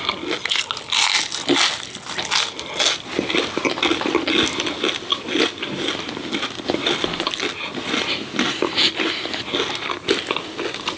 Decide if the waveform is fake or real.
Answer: real